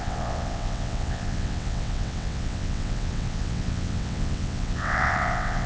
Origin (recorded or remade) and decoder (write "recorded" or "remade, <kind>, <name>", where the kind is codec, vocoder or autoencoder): remade, vocoder, WaveNeXt